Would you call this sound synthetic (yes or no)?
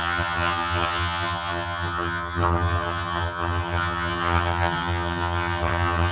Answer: yes